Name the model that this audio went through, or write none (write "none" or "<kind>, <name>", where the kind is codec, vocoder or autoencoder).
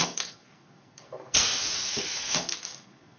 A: codec, SNAC